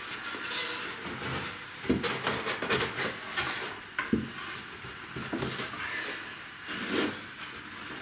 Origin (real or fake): real